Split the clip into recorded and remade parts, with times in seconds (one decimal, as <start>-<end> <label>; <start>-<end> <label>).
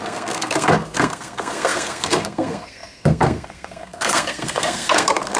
0.0-5.4 remade